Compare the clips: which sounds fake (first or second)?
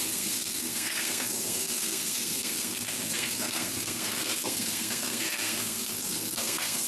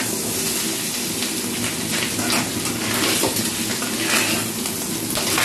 first